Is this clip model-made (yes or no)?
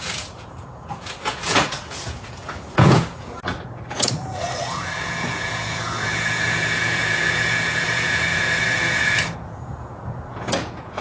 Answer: yes